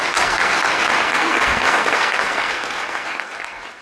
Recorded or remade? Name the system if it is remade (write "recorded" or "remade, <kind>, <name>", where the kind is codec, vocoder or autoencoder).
remade, codec, SNAC